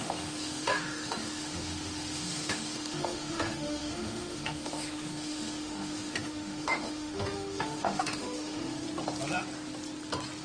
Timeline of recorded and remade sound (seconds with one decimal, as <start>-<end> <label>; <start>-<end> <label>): 0.0-8.8 remade; 8.8-10.4 recorded